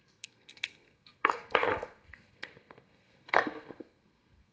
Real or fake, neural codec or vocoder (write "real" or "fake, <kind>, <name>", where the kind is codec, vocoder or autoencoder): fake, codec, SNAC